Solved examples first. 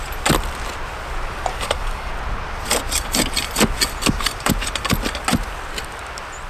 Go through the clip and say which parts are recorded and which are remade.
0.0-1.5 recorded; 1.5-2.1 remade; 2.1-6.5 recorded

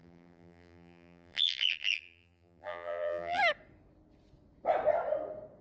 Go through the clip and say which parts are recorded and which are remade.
0.0-3.4 remade; 3.4-5.6 recorded

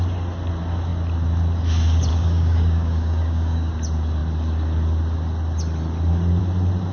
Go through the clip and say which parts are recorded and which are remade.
0.0-2.1 recorded; 2.1-3.7 remade; 3.7-6.9 recorded

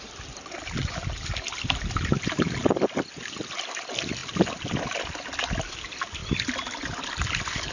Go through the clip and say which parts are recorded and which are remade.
0.0-7.7 recorded

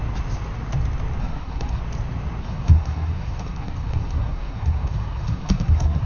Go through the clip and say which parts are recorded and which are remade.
0.0-1.2 recorded; 1.2-1.8 remade; 1.8-2.4 recorded; 2.4-6.1 remade